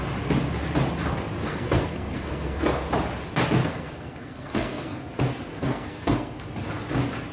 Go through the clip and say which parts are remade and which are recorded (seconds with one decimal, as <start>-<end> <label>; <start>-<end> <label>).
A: 0.0-1.5 recorded; 1.5-2.6 remade; 2.6-3.6 recorded; 3.6-5.0 remade; 5.0-5.5 recorded; 5.5-6.4 remade; 6.4-7.3 recorded